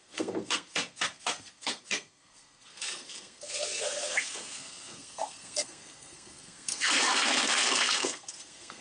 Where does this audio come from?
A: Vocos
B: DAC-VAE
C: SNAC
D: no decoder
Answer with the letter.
C